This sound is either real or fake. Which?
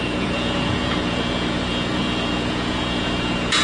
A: fake